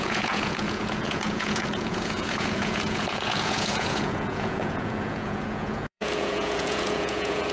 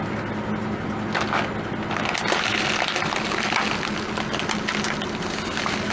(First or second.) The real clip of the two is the second